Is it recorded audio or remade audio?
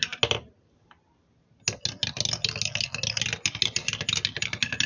recorded